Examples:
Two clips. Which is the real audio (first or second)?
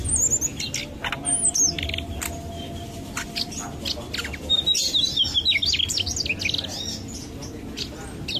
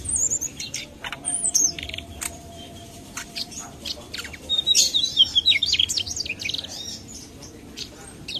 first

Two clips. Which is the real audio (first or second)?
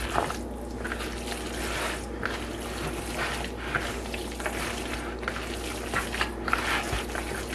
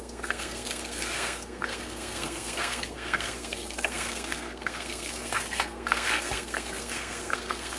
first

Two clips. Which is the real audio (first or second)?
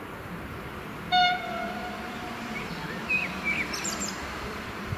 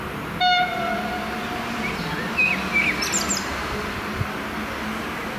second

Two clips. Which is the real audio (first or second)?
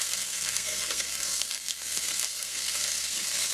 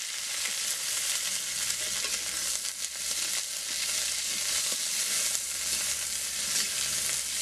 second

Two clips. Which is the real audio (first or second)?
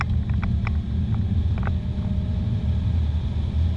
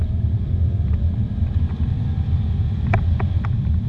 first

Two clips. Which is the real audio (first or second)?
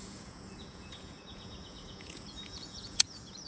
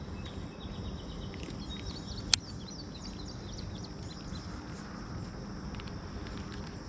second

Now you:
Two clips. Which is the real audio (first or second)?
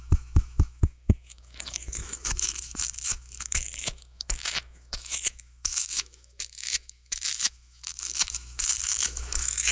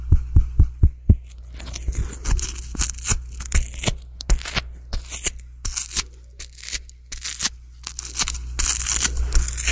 second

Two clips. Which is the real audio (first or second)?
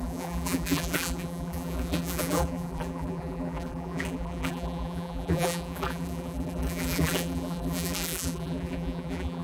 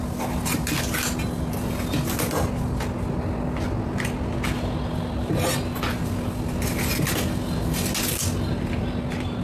second